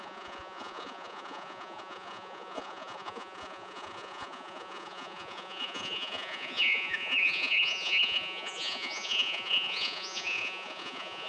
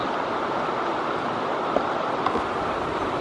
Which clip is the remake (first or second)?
first